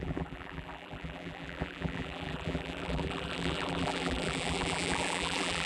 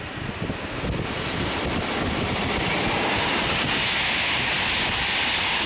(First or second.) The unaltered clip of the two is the second